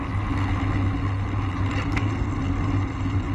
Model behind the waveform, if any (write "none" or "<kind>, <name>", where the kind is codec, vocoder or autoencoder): none